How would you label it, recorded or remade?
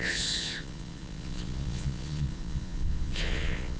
remade